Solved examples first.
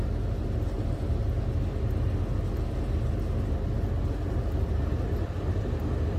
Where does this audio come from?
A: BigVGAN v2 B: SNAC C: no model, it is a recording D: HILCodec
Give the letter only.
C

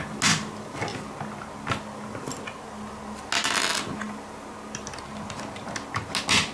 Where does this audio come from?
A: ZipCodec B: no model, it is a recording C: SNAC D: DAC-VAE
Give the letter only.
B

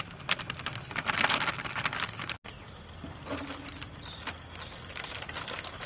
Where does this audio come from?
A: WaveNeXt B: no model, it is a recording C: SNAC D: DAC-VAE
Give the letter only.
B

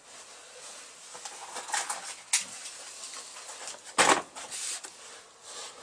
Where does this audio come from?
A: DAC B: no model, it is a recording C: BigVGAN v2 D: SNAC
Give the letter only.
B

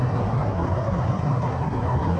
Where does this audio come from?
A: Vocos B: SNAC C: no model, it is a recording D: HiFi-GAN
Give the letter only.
B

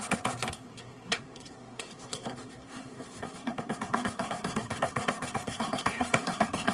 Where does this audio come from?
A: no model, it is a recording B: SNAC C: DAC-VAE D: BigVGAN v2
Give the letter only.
B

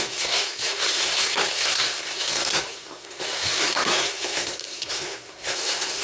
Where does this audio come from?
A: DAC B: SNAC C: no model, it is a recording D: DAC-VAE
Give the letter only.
B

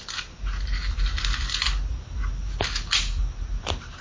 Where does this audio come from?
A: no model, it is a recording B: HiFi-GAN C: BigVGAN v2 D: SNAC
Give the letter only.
A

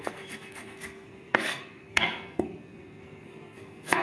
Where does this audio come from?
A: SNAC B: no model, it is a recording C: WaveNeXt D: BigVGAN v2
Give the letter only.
A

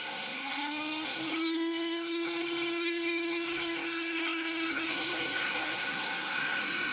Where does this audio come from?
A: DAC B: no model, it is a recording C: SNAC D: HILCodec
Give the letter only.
C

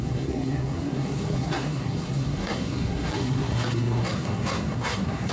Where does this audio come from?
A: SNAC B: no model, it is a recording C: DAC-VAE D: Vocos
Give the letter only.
A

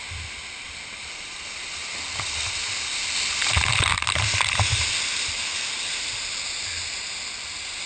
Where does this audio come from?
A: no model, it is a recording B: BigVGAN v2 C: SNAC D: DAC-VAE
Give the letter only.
A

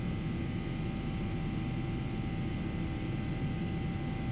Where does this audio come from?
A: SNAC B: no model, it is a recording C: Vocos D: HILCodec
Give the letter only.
B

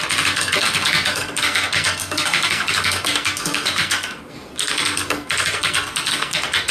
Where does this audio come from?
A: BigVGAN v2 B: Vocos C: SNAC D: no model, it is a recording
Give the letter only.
C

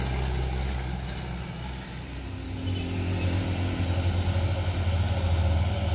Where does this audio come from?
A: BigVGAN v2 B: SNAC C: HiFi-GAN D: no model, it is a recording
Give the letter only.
D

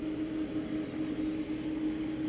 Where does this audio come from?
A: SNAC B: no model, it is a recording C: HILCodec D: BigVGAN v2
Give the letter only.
B